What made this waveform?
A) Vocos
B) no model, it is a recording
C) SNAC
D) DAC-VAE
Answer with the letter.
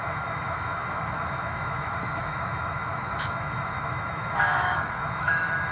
D